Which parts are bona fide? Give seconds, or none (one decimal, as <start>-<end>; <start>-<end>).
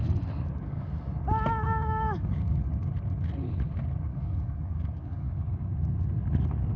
0.0-1.6; 2.7-4.1; 5.3-6.8